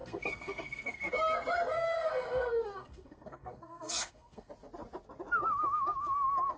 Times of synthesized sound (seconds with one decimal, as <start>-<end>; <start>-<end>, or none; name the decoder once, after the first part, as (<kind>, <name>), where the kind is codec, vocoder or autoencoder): 0.0-1.1 (codec, SNAC); 1.7-4.5